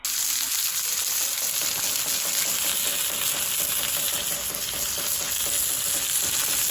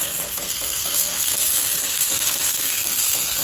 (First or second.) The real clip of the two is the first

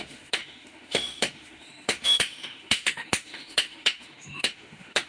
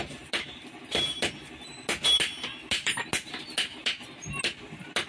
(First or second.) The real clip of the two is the second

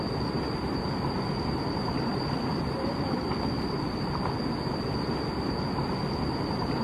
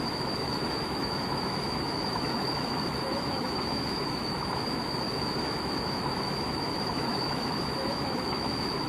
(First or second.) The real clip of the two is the first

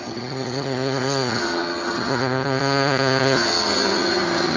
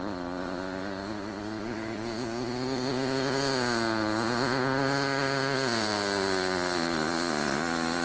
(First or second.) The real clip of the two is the second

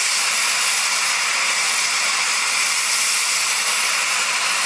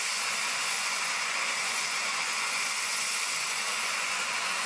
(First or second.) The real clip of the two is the first